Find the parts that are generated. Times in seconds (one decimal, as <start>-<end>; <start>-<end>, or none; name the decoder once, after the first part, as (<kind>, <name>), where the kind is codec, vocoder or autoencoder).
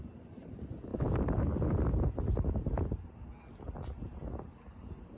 none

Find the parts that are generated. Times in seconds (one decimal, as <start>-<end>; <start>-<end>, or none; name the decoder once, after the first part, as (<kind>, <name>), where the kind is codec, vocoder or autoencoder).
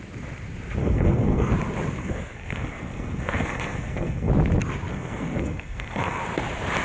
0.8-1.5 (codec, SNAC); 2.0-4.3; 4.9-6.2